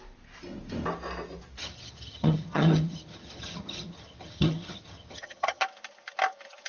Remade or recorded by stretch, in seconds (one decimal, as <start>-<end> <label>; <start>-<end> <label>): 0.0-1.6 recorded; 1.6-5.6 remade; 5.6-6.7 recorded